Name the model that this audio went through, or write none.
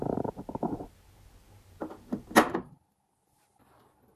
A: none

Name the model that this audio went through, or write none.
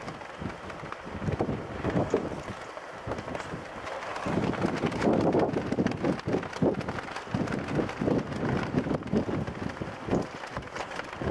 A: none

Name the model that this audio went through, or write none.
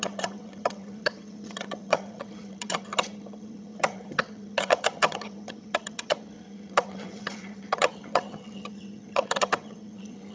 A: vocoder, HiFi-GAN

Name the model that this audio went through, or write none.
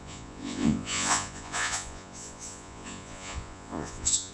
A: vocoder, Vocos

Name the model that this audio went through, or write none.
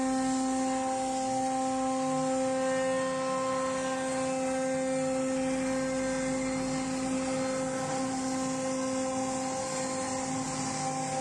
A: none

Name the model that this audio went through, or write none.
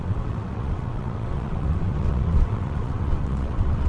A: vocoder, WaveNeXt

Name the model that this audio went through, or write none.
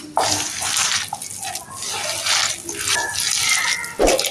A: none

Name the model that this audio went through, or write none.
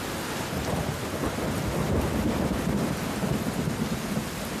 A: none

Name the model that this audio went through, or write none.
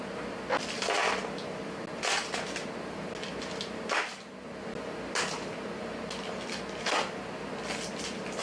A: none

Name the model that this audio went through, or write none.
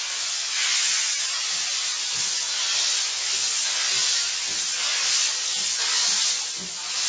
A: none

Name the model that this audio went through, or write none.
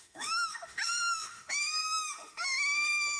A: autoencoder, DAC-VAE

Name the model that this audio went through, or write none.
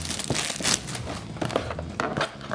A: none